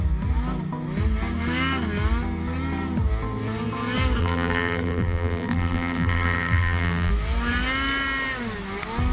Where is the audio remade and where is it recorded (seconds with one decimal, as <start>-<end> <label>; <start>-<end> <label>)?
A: 0.0-4.2 recorded; 4.2-7.1 remade; 7.1-9.1 recorded